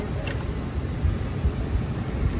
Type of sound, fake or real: real